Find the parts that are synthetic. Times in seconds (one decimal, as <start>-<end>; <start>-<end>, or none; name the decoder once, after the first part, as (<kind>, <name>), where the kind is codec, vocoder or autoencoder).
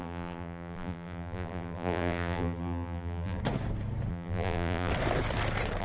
0.0-3.4 (vocoder, BigVGAN v2); 4.1-4.9